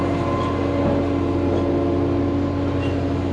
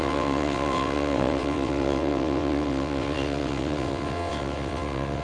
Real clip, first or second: first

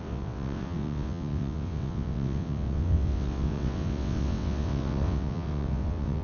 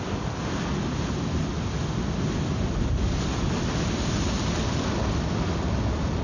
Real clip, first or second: second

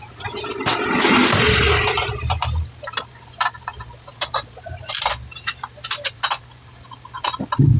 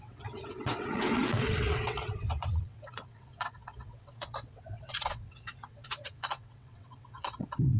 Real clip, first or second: first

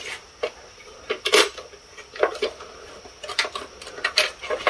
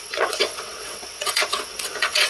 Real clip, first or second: first